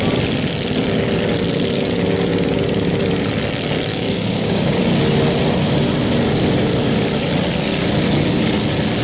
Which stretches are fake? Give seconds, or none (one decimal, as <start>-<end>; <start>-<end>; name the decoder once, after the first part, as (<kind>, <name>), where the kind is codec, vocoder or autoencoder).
3.9-4.8 (codec, DAC)